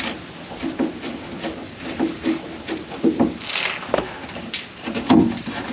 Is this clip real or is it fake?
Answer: real